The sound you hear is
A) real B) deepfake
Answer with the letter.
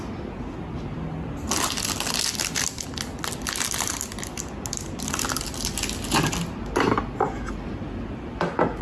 A